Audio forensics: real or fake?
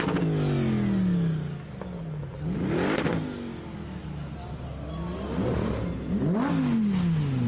real